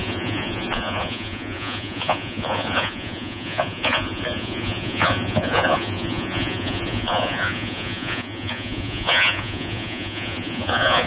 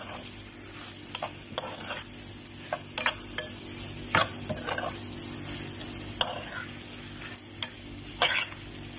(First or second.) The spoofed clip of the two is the first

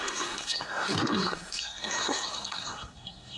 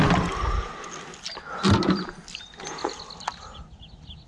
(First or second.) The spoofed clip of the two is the first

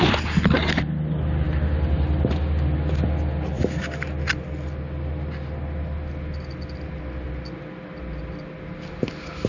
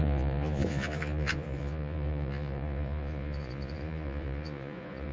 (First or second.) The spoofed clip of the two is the second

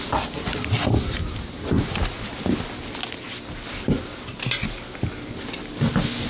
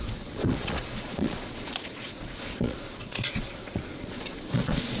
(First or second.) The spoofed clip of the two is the second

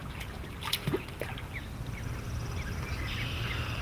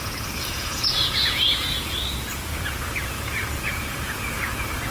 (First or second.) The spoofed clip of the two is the second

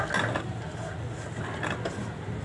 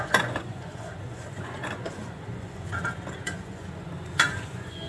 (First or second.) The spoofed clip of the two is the second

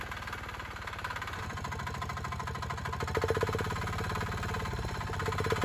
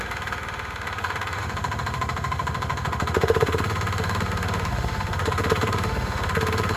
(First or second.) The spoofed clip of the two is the second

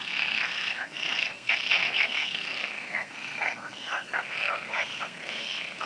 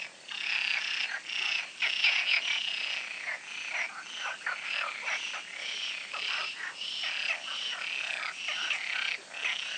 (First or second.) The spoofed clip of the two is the first